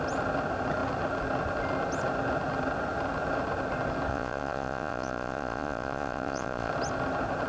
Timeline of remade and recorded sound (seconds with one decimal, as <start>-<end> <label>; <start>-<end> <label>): 0.0-4.1 recorded; 4.1-6.7 remade; 6.7-7.5 recorded